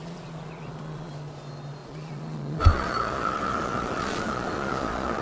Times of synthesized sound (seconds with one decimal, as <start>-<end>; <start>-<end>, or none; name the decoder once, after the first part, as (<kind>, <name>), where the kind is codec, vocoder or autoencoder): 0.0-1.1 (vocoder, Vocos); 1.8-5.2